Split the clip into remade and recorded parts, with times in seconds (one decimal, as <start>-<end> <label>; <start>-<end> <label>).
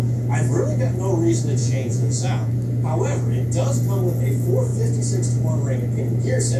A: 0.0-1.6 recorded; 1.6-2.5 remade; 2.5-6.6 recorded